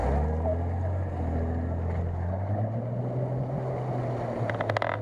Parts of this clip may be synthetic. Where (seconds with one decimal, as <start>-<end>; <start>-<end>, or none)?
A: none